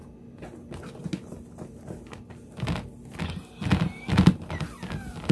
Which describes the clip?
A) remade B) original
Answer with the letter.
B